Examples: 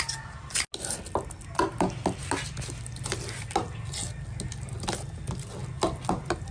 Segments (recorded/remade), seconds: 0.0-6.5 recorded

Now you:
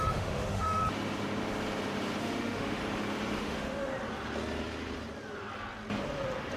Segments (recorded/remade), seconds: 0.0-0.8 remade; 0.8-2.2 recorded; 2.2-2.8 remade; 2.8-3.4 recorded; 3.4-3.9 remade; 3.9-6.6 recorded

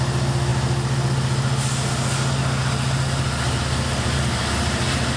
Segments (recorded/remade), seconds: 0.0-5.2 recorded

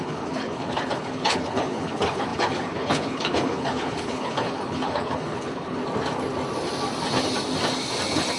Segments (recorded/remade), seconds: 0.0-5.8 remade; 5.8-8.4 recorded

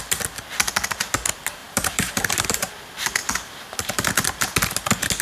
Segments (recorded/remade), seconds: 0.0-1.6 recorded; 1.6-2.7 remade; 2.7-3.2 recorded; 3.2-4.1 remade; 4.1-5.2 recorded